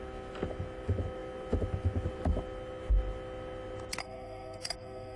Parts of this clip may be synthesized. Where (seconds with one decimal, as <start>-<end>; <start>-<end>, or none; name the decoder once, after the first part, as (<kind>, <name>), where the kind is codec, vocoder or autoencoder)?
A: 4.0-5.2 (codec, SNAC)